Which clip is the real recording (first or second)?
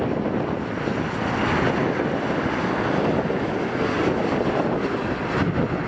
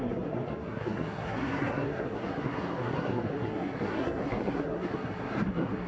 first